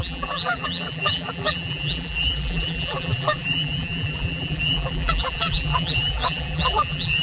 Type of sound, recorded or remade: remade